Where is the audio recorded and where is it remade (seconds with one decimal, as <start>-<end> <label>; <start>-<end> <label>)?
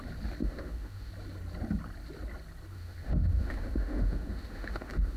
0.0-0.4 recorded; 0.4-1.1 remade; 1.1-2.7 recorded; 2.7-5.2 remade